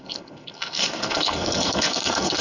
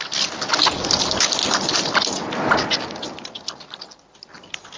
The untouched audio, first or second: second